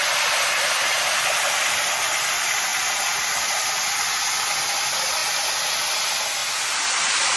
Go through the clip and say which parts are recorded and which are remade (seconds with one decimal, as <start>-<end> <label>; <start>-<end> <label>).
0.0-7.4 recorded